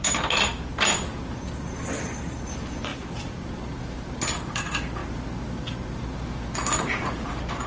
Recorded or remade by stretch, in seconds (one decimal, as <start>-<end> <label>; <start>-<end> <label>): 0.0-2.9 recorded; 2.9-3.4 remade; 3.4-7.7 recorded